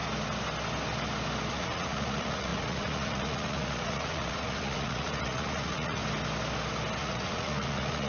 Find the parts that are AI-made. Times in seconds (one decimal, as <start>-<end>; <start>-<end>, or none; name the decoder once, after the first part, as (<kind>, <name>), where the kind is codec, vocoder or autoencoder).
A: 1.5-6.0 (vocoder, Vocos); 7.0-8.1